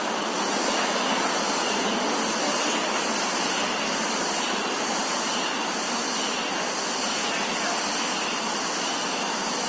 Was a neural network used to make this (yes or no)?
no